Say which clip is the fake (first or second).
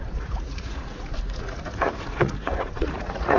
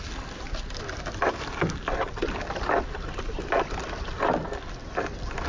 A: first